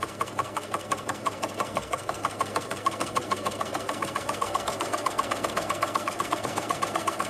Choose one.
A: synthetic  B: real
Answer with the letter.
A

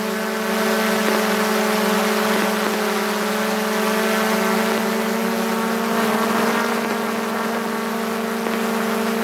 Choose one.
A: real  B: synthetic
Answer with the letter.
A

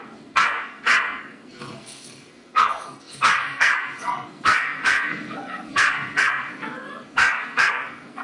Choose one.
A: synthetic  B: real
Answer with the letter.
A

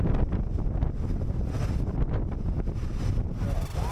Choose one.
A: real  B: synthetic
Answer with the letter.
A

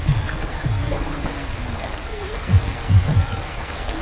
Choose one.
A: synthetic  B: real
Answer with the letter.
A